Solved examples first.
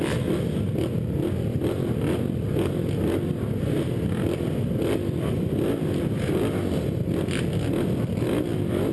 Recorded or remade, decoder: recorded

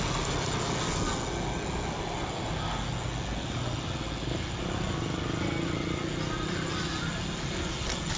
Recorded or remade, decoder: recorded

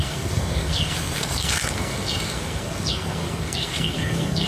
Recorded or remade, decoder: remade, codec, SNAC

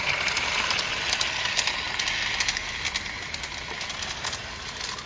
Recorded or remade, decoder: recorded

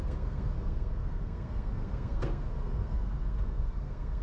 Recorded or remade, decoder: remade, codec, SNAC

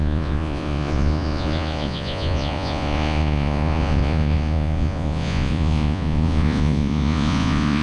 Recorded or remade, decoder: remade, vocoder, Vocos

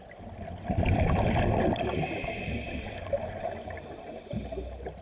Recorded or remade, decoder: recorded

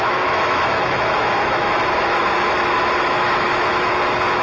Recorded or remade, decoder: remade, autoencoder, DAC-VAE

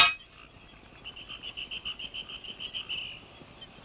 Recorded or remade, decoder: recorded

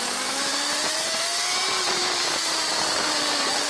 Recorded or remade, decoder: remade, vocoder, BigVGAN v2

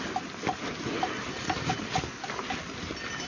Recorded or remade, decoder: recorded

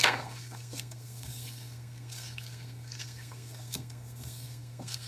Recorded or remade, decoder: remade, codec, SNAC